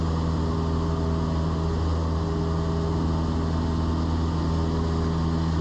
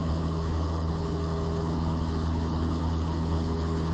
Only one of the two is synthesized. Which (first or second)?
second